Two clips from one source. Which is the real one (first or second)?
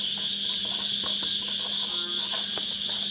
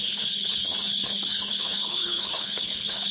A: first